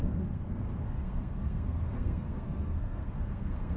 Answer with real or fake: fake